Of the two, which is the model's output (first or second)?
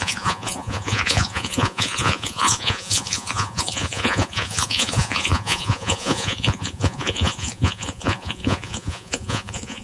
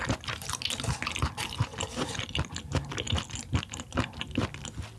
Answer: first